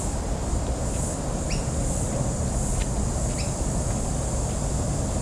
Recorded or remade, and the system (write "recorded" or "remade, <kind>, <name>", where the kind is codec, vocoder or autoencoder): recorded